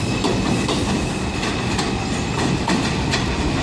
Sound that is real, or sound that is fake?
real